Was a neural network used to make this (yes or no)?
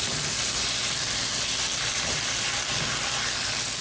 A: no